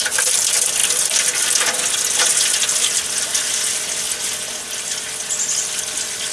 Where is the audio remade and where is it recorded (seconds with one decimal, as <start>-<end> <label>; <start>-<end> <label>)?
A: 0.0-6.3 recorded